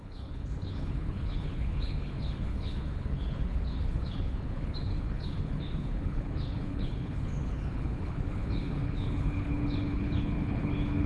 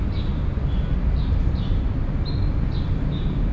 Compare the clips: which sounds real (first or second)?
second